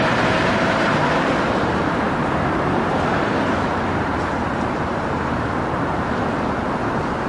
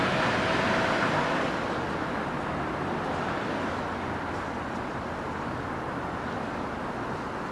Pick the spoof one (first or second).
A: first